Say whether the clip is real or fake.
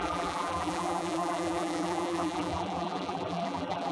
fake